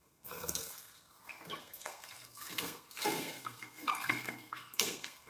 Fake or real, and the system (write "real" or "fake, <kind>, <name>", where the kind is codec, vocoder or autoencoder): fake, codec, SNAC